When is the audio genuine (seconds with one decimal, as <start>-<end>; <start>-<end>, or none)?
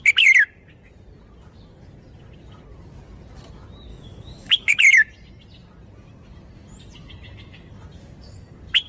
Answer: 0.0-3.9; 4.8-8.9